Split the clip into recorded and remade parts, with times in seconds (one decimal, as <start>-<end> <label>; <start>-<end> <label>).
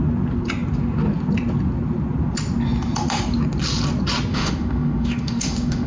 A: 0.0-4.3 recorded; 4.3-5.9 remade